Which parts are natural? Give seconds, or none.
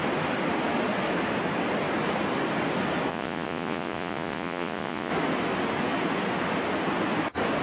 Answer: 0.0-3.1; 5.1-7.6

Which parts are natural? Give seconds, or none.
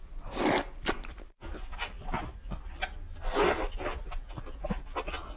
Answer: 2.8-5.4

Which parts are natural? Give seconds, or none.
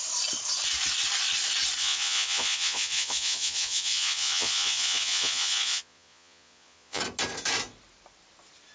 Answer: 0.0-1.8; 7.0-8.7